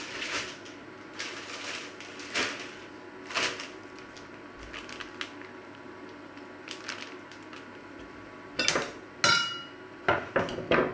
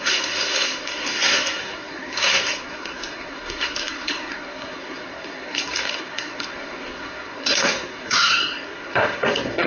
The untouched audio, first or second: first